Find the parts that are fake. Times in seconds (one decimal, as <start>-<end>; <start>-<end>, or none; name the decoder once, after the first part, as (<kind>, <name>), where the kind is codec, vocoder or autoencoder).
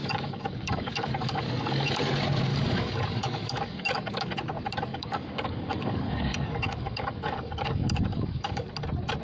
0.0-2.0 (codec, DAC); 2.5-4.3; 4.9-8.7